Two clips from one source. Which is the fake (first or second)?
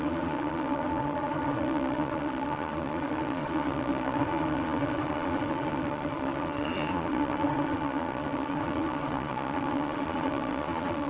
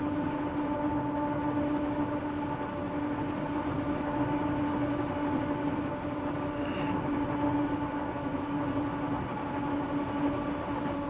first